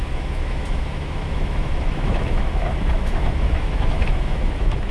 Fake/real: fake